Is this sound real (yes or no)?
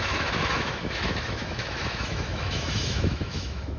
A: no